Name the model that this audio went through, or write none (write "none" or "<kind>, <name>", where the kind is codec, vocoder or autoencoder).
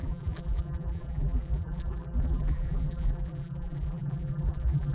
vocoder, BigVGAN v2